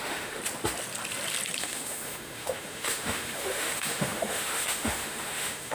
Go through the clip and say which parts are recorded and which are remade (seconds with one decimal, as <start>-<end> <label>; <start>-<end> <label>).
0.0-0.4 remade; 0.4-1.6 recorded; 1.6-5.7 remade